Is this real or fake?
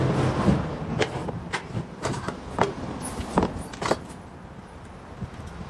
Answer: real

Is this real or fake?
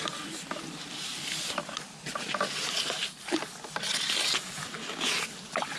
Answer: real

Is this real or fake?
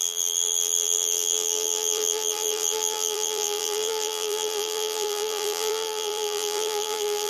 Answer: fake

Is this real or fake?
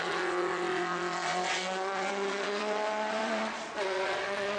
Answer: fake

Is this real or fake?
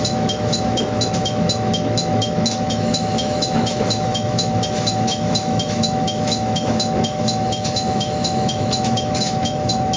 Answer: fake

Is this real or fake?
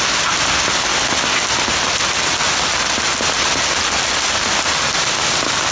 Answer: real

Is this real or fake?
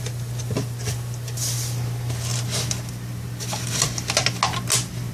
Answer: real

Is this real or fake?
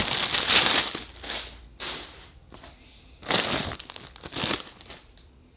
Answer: real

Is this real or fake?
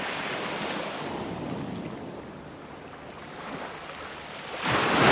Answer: real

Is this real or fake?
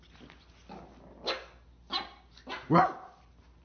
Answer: real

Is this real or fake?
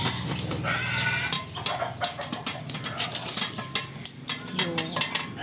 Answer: real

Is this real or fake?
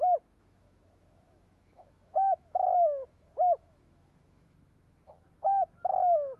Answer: fake